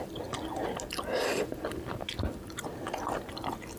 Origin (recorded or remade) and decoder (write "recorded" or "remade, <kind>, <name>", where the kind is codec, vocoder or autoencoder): recorded